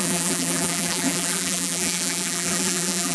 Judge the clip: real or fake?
fake